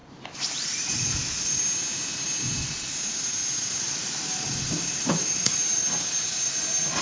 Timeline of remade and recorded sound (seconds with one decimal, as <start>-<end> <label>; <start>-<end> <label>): 0.0-1.6 remade; 1.6-3.7 recorded; 3.7-5.8 remade; 5.8-7.0 recorded